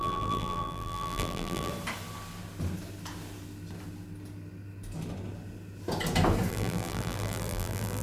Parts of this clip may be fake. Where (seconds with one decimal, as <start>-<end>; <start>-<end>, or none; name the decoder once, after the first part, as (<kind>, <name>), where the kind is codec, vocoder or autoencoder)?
0.0-1.7 (vocoder, BigVGAN v2); 6.5-8.0

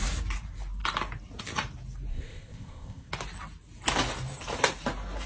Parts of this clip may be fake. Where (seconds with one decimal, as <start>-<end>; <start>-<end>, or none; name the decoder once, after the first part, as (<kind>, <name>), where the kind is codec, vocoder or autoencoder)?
2.1-3.1 (codec, ZipCodec)